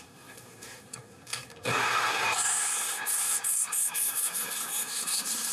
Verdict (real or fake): fake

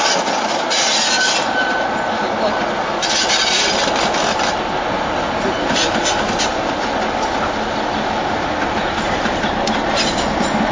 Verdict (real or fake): real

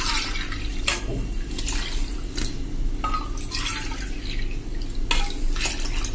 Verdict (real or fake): real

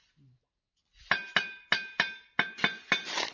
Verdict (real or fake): real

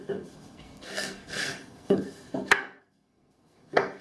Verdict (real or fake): fake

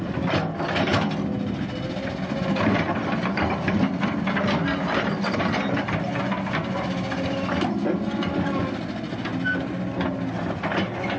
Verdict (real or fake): real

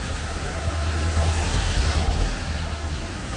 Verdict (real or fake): fake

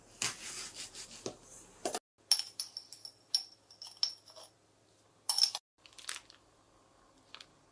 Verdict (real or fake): real